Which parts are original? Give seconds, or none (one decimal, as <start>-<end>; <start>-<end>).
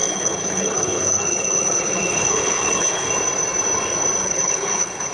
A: 3.1-4.2